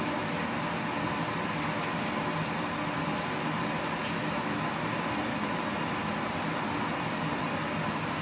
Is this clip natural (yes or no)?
yes